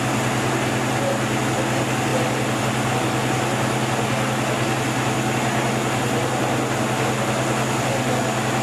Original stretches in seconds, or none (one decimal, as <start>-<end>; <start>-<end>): 0.0-8.6